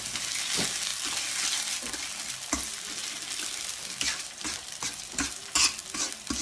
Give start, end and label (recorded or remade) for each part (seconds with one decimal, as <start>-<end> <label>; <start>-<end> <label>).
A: 0.0-6.4 recorded